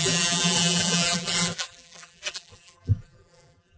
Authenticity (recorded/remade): remade